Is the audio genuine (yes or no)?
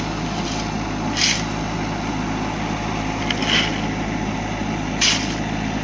yes